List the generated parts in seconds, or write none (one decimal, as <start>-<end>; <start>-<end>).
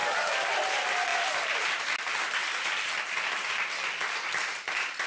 0.0-0.5